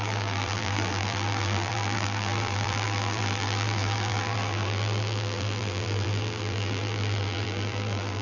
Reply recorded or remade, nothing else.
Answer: remade